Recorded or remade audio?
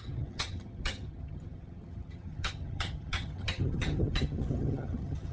remade